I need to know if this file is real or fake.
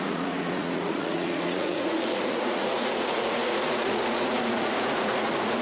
fake